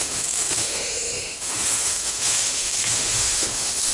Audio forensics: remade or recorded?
remade